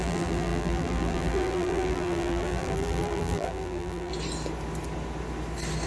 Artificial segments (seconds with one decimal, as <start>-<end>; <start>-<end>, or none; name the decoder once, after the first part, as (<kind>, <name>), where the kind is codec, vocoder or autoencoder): 0.0-4.1 (vocoder, BigVGAN v2)

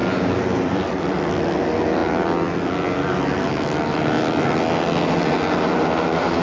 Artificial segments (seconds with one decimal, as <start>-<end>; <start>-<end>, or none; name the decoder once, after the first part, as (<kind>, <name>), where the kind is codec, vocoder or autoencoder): 0.0-1.3 (vocoder, BigVGAN v2)